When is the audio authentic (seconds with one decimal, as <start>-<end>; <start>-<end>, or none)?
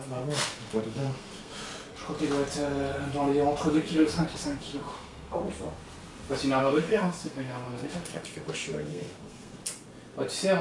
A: 1.5-3.7; 5.4-6.6; 9.6-10.6